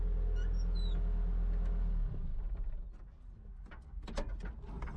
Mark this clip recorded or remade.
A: recorded